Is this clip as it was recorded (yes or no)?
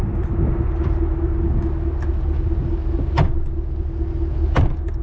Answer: yes